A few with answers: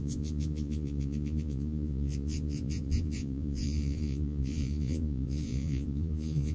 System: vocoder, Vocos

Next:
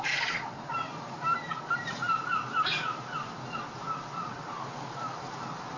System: none